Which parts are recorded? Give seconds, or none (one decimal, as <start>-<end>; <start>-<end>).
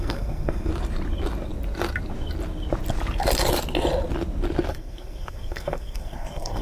0.7-4.7